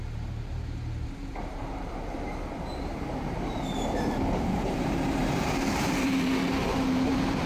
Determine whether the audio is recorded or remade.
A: remade